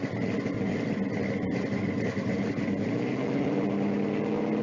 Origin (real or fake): real